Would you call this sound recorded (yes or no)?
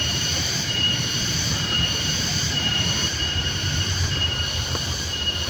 no